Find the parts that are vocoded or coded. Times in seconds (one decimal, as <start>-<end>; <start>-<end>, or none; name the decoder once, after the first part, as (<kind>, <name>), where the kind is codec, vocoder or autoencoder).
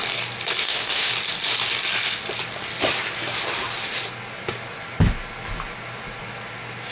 0.6-1.1 (autoencoder, DAC-VAE)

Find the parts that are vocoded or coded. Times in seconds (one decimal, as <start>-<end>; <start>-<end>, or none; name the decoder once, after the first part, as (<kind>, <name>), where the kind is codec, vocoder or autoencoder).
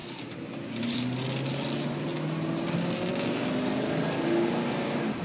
none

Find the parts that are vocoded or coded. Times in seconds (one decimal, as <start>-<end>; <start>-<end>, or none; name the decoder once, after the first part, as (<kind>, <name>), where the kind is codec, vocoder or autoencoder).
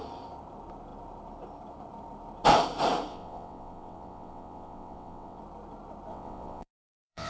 3.1-5.4 (vocoder, WaveNeXt); 6.1-7.3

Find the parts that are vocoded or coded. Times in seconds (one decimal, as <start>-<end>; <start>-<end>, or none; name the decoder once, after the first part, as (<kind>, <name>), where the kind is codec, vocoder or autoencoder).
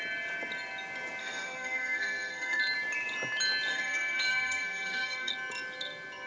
1.2-2.6 (codec, SNAC); 3.7-5.3